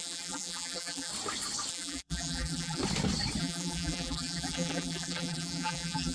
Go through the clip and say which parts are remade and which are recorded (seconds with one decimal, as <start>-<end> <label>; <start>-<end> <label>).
0.0-1.1 remade; 1.1-1.7 recorded; 1.7-2.8 remade; 2.8-3.4 recorded; 3.4-6.1 remade